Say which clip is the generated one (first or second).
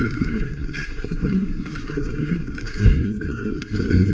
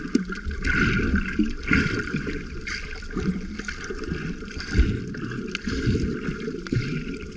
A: first